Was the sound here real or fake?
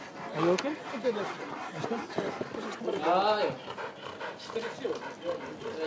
real